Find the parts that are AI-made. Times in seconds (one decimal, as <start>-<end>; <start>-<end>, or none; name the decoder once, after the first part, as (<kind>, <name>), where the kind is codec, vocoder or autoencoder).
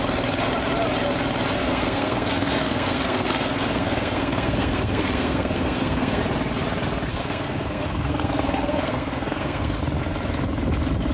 1.6-6.2 (codec, SNAC); 7.1-9.8